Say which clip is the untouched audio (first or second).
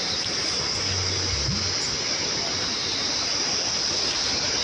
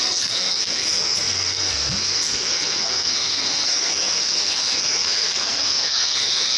first